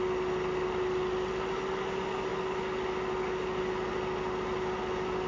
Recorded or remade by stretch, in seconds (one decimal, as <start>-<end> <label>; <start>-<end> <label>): 0.0-5.3 recorded